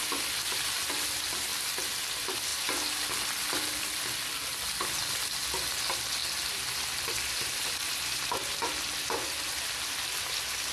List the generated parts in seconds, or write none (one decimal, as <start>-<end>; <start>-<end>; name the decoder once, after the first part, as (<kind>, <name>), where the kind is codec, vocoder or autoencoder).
6.2-8.5 (vocoder, BigVGAN v2)